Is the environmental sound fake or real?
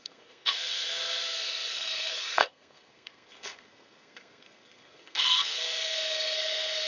fake